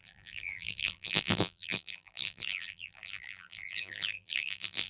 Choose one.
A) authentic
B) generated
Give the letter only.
B